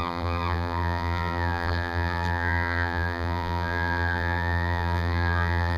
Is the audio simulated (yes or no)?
yes